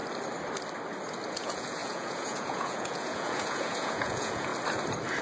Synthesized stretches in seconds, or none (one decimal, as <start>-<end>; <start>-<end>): 1.3-4.5